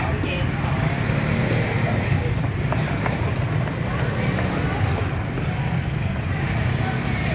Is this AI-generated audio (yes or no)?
no